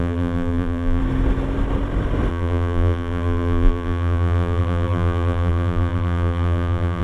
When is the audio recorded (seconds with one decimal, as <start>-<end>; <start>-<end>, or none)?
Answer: 1.0-2.3